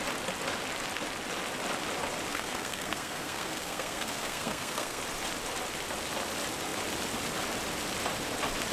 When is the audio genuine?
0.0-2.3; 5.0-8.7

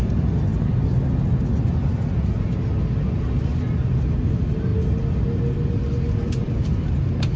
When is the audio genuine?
0.5-4.3; 4.7-5.2

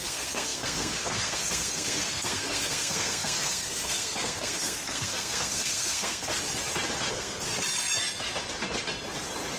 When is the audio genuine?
6.3-7.1; 7.5-9.6

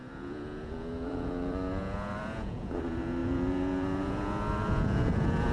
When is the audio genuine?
none

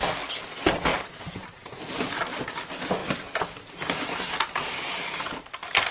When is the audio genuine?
0.0-0.9; 1.8-5.9

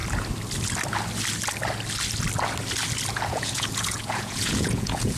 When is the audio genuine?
0.0-3.1